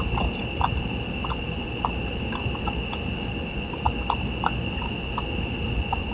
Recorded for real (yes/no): yes